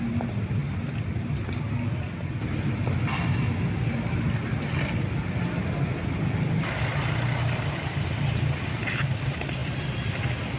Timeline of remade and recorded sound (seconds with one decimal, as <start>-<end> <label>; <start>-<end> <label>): 0.0-10.6 recorded